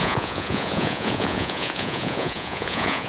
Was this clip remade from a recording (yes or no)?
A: yes